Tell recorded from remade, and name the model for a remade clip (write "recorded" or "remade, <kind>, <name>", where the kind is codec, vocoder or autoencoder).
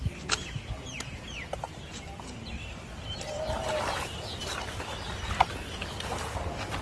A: recorded